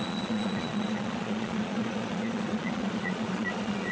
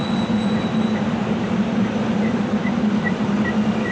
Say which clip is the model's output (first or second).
first